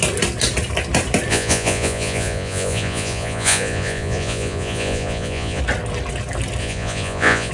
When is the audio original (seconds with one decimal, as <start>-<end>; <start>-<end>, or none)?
0.0-1.3; 5.6-6.6